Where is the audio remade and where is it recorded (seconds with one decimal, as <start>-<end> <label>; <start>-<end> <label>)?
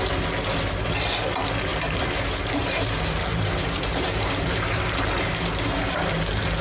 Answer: 0.0-1.7 recorded; 1.7-5.7 remade; 5.7-6.6 recorded